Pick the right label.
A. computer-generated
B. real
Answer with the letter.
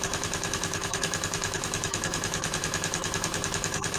A